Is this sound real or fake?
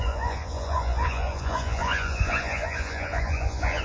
fake